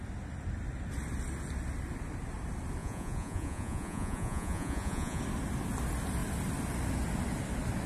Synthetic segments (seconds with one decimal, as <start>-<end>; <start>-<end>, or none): 2.8-5.2